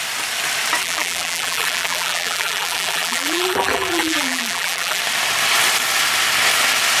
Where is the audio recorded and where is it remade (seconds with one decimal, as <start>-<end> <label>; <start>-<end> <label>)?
0.0-0.8 recorded; 0.8-5.0 remade; 5.0-7.0 recorded

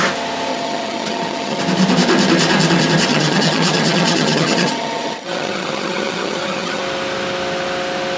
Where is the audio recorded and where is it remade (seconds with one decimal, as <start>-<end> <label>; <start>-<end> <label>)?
0.0-0.5 recorded; 0.5-1.6 remade; 1.6-3.1 recorded; 3.1-6.8 remade; 6.8-8.2 recorded

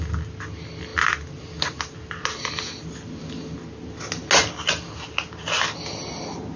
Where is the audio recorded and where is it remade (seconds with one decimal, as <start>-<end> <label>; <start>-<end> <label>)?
0.0-6.6 recorded

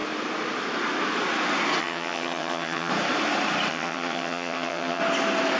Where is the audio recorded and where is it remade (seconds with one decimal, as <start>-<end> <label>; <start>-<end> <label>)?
0.0-1.8 recorded; 1.8-2.9 remade; 2.9-3.7 recorded; 3.7-5.0 remade; 5.0-5.6 recorded

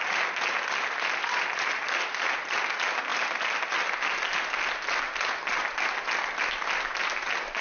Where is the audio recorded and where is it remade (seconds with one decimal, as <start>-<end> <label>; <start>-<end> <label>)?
0.0-7.6 recorded

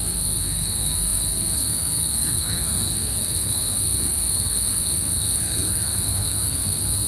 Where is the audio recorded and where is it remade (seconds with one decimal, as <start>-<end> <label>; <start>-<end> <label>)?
0.0-7.1 remade

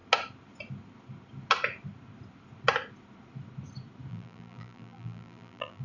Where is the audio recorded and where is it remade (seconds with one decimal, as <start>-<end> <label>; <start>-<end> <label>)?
0.0-4.1 recorded; 4.1-5.8 remade

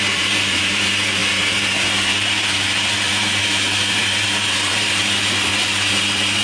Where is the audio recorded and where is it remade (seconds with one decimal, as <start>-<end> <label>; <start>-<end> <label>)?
0.0-5.5 remade; 5.5-6.0 recorded; 6.0-6.4 remade